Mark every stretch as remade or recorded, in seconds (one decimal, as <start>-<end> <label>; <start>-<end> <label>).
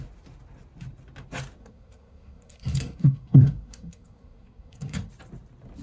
0.0-1.6 recorded; 1.6-5.1 remade; 5.1-5.8 recorded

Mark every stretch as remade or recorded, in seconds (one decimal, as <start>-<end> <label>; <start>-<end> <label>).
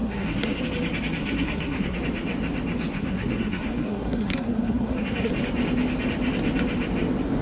0.0-0.6 remade; 0.6-1.2 recorded; 1.2-2.0 remade; 2.0-2.9 recorded; 2.9-5.3 remade; 5.3-7.4 recorded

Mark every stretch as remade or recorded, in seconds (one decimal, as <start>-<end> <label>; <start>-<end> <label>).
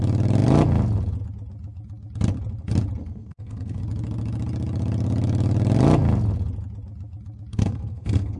0.0-3.0 recorded; 3.0-3.8 remade; 3.8-7.5 recorded; 7.5-8.4 remade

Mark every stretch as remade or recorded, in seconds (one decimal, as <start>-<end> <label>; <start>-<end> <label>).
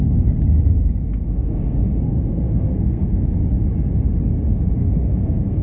0.0-0.8 recorded; 0.8-3.2 remade; 3.2-4.8 recorded; 4.8-5.6 remade